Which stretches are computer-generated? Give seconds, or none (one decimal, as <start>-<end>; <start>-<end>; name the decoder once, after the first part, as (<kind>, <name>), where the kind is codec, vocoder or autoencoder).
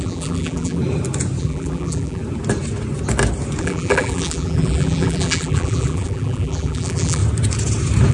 0.0-0.8 (vocoder, BigVGAN v2); 1.4-2.2; 3.6-7.2